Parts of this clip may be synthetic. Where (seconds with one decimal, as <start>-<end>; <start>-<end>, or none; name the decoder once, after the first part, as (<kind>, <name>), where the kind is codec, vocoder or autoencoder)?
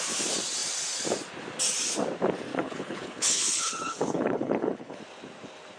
2.5-5.0 (codec, HILCodec)